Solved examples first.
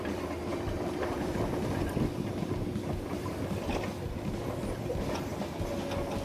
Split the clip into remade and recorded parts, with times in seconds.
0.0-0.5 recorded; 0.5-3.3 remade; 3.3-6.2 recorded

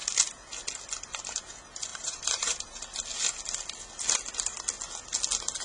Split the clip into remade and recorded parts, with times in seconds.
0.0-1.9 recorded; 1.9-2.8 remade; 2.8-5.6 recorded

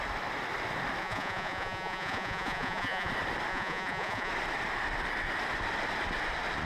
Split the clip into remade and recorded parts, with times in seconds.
0.0-1.0 recorded; 1.0-3.1 remade; 3.1-3.5 recorded; 3.5-4.3 remade; 4.3-6.7 recorded

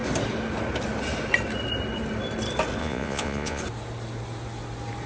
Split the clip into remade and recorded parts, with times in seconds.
0.0-2.8 recorded; 2.8-3.6 remade; 3.6-5.1 recorded

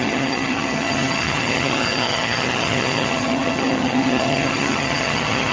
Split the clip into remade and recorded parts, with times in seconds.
0.0-5.5 remade

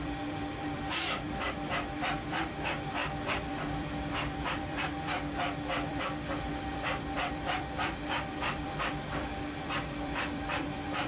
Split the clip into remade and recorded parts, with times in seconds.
0.0-11.1 remade

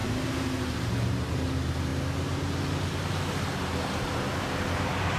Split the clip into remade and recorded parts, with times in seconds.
0.0-5.2 recorded